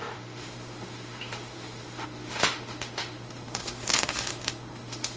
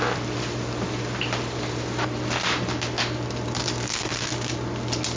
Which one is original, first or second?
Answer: second